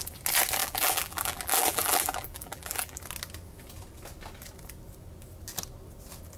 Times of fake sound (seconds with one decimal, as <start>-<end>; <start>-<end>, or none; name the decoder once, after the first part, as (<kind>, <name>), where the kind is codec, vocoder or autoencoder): 0.6-3.0 (vocoder, BigVGAN v2)